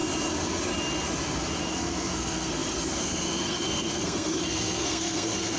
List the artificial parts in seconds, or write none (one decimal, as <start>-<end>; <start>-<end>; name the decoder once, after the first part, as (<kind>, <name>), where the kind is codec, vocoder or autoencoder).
1.7-5.6 (codec, SNAC)